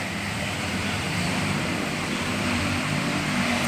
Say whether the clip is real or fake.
fake